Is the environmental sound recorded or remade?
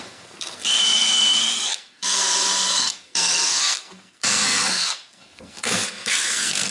remade